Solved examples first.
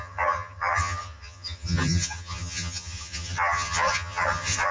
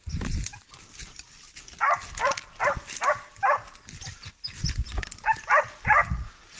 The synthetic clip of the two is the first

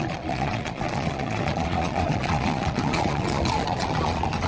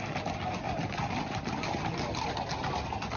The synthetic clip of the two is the first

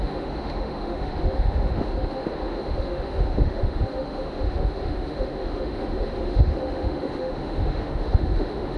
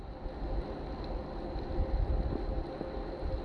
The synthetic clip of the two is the first